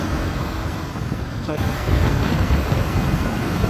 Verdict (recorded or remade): remade